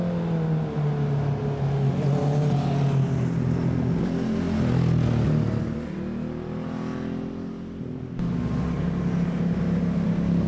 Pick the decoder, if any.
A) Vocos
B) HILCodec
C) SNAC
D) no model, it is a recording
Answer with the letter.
D